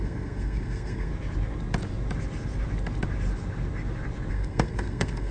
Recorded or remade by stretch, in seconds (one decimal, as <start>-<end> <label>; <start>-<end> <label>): 0.0-1.1 remade; 1.1-4.3 recorded; 4.3-5.3 remade